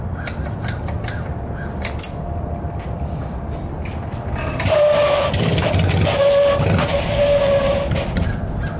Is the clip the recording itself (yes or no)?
yes